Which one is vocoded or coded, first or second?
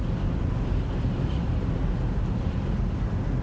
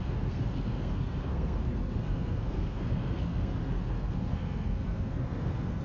second